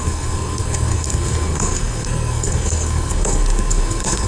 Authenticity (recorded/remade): remade